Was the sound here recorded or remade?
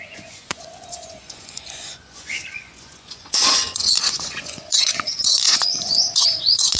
remade